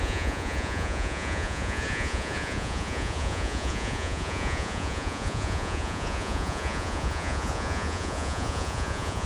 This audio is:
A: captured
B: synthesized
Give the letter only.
B